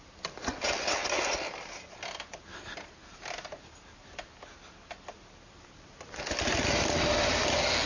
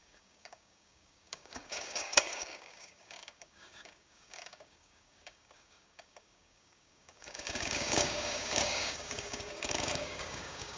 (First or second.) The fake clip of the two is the second